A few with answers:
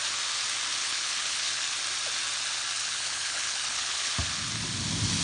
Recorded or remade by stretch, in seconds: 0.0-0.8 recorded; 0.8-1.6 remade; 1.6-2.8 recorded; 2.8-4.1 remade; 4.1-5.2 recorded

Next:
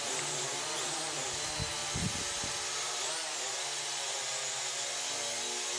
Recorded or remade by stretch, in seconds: 0.0-5.8 recorded

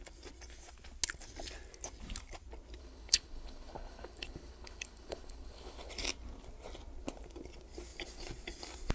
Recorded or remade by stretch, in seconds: 0.0-2.8 recorded; 2.8-5.9 remade; 5.9-8.9 recorded

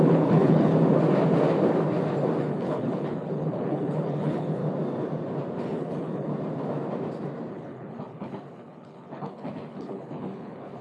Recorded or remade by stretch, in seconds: 0.0-0.7 remade; 0.7-2.4 recorded; 2.4-4.6 remade; 4.6-5.6 recorded; 5.6-6.3 remade; 6.3-7.5 recorded; 7.5-10.8 remade